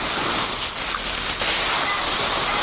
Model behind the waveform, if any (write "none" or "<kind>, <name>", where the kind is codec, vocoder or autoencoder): none